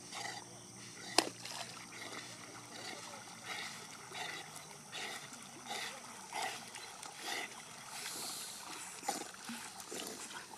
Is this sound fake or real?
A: real